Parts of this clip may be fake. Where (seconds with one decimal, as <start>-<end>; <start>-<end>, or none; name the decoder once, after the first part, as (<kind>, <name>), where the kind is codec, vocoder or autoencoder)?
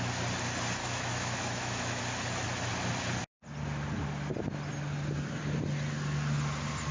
0.8-2.0 (autoencoder, DAC-VAE)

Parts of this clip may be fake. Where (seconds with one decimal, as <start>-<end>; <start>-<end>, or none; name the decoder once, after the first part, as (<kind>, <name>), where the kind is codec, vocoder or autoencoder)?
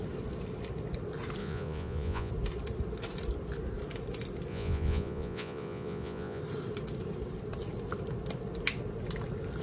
1.4-2.3 (vocoder, Vocos); 4.5-6.4